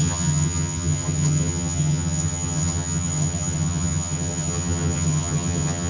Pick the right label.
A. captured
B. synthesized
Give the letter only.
B